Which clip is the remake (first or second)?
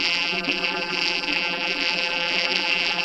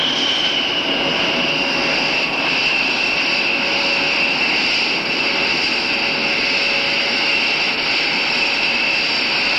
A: first